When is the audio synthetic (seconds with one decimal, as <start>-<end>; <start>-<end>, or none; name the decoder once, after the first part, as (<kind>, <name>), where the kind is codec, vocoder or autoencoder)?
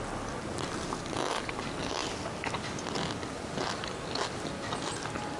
none